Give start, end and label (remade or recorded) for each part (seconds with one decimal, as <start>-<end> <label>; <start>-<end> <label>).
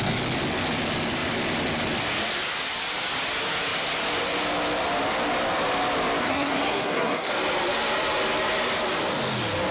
0.0-6.2 recorded; 6.2-7.3 remade; 7.3-9.7 recorded